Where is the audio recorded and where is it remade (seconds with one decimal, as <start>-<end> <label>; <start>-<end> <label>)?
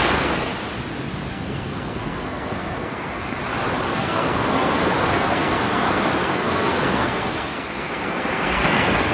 0.0-0.5 remade; 0.5-1.3 recorded; 1.3-3.4 remade; 3.4-3.9 recorded; 3.9-9.1 remade